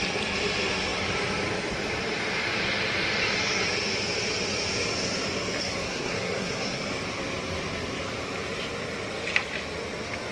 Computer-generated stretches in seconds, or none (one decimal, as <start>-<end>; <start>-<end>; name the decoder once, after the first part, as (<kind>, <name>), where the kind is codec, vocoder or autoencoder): 5.6-6.8 (codec, SNAC)